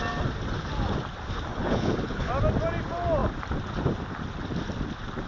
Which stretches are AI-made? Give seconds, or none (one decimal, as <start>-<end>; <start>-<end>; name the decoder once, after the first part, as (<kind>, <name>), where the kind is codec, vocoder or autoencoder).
1.5-2.3 (codec, HILCodec)